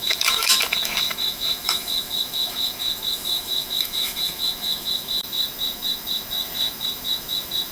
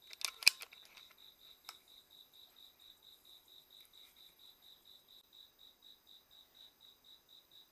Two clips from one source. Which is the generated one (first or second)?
first